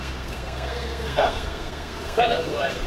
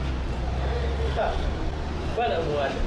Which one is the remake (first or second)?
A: first